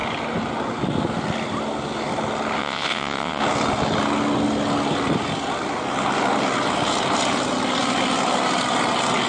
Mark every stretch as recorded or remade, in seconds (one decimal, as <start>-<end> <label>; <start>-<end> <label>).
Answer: 0.0-2.6 recorded; 2.6-3.4 remade; 3.4-9.3 recorded